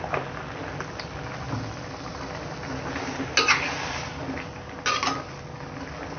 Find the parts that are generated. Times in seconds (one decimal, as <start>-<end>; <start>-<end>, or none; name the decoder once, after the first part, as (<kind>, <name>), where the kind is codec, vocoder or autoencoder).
none

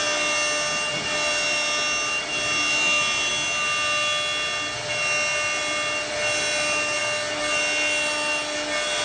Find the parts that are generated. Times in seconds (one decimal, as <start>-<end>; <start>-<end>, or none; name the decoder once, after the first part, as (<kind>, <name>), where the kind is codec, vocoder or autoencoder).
none

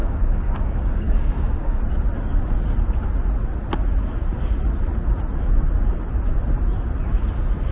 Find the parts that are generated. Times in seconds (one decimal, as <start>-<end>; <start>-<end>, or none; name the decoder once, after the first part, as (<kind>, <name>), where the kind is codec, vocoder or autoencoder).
0.0-1.8 (codec, DAC)

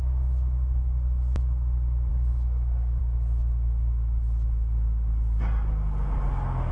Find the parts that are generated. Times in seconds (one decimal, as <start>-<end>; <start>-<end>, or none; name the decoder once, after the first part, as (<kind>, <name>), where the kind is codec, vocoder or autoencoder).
2.1-3.0 (codec, DAC)